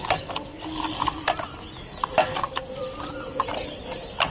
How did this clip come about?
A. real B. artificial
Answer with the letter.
A